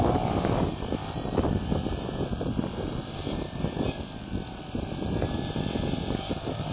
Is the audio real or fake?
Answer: real